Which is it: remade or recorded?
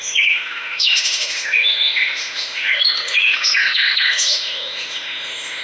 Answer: remade